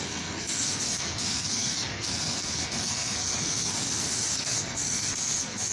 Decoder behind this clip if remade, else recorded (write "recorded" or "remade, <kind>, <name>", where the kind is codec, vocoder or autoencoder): remade, codec, SNAC